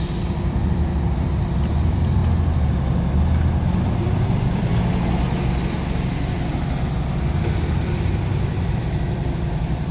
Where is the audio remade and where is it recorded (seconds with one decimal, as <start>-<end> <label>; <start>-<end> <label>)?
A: 0.0-2.2 remade; 2.2-3.8 recorded; 3.8-4.7 remade; 4.7-7.6 recorded; 7.6-9.9 remade